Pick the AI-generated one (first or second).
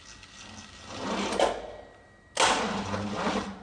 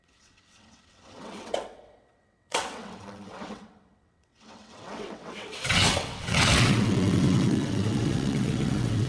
second